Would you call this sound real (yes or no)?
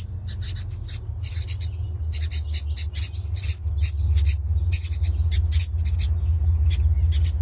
yes